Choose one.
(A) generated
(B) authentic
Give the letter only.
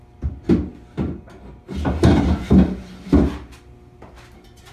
B